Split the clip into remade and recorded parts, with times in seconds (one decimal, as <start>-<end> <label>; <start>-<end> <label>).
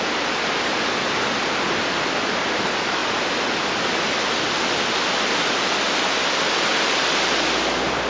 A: 0.0-8.1 recorded